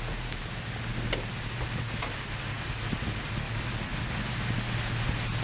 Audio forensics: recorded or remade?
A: recorded